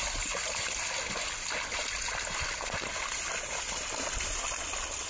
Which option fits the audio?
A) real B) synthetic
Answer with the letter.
A